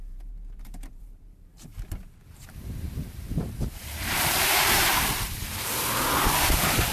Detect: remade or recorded remade